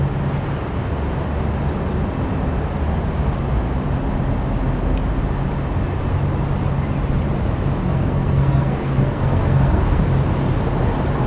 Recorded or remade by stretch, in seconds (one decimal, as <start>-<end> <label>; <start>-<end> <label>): 0.0-7.8 recorded; 7.8-10.0 remade; 10.0-11.3 recorded